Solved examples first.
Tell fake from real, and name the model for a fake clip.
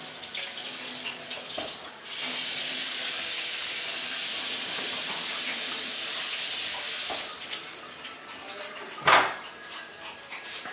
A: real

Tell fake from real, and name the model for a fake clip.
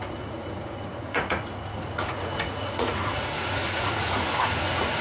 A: fake, vocoder, Vocos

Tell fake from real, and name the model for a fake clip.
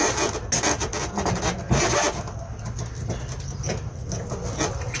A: real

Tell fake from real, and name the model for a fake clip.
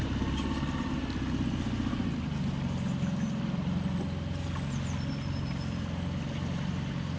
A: real